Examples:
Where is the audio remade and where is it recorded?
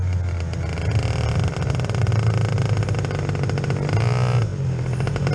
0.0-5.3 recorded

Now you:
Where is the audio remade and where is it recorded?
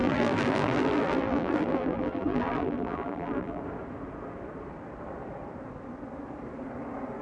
0.0-3.6 remade; 3.6-7.2 recorded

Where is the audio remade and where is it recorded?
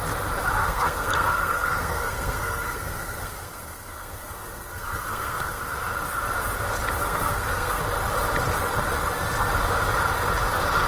0.0-0.6 recorded; 0.6-5.6 remade; 5.6-7.0 recorded; 7.0-7.8 remade; 7.8-10.9 recorded